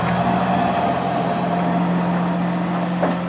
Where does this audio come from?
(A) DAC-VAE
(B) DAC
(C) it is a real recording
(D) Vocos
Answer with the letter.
C